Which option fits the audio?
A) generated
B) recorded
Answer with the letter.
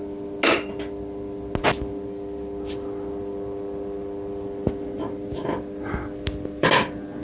B